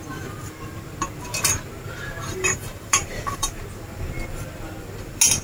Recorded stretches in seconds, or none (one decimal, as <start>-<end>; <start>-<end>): 0.0-2.3; 3.6-5.4